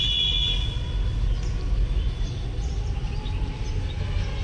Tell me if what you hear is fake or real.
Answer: real